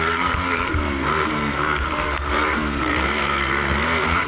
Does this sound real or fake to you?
fake